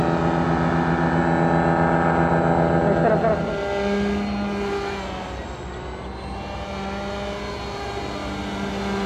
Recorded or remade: recorded